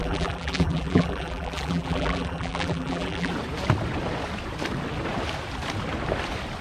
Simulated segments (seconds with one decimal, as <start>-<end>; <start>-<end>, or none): 0.0-3.3